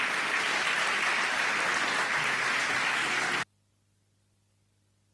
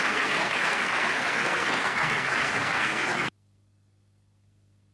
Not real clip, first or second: second